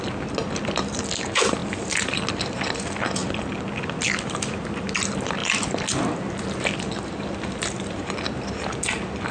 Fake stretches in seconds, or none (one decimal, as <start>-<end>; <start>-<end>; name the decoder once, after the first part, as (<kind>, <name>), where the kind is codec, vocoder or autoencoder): none

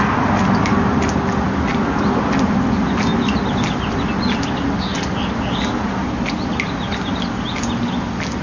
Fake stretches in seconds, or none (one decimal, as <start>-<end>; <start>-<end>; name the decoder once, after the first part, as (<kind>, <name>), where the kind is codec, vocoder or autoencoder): none

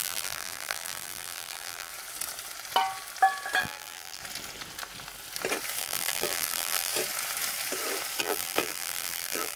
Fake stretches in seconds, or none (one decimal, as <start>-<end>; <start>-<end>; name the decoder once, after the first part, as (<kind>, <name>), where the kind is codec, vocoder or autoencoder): 0.0-1.9 (vocoder, BigVGAN v2); 3.6-4.2; 5.8-6.9; 8.2-9.6

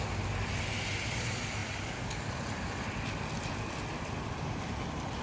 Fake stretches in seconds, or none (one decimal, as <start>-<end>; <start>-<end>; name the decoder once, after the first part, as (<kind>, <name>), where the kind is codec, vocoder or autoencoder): 1.6-4.7 (vocoder, BigVGAN v2)